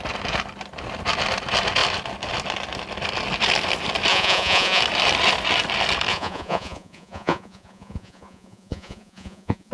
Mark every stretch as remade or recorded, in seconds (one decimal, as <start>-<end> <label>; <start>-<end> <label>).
0.0-4.1 recorded; 4.1-4.8 remade; 4.8-6.1 recorded; 6.1-9.7 remade